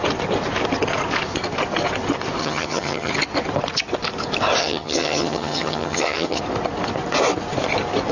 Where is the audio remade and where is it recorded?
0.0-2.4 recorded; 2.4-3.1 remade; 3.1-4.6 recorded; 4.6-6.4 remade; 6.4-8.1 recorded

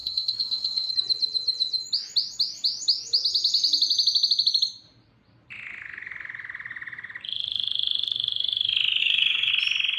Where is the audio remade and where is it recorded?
0.0-0.9 remade; 0.9-9.0 recorded; 9.0-9.5 remade; 9.5-10.0 recorded

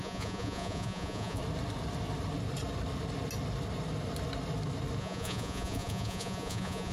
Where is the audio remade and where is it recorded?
0.0-1.4 remade; 1.4-5.0 recorded; 5.0-6.9 remade

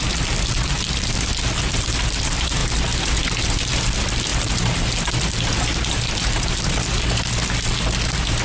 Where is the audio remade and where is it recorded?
0.0-8.4 recorded